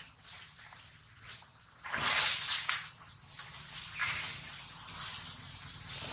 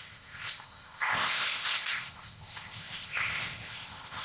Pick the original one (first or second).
first